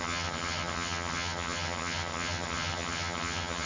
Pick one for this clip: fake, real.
fake